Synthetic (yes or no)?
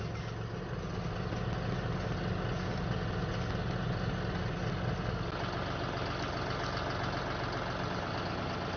no